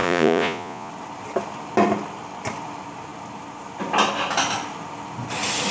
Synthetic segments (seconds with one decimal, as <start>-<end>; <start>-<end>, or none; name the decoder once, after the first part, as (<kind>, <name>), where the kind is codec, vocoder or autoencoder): 0.0-0.9 (vocoder, Vocos)